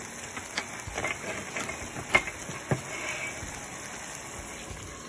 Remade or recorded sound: recorded